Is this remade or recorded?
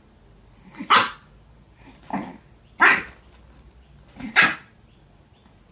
recorded